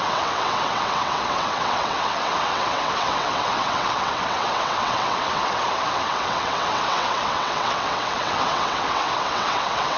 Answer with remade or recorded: remade